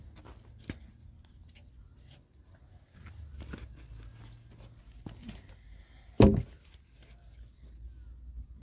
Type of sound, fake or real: real